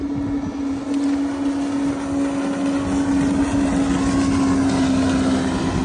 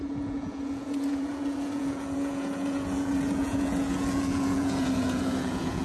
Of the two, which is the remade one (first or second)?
second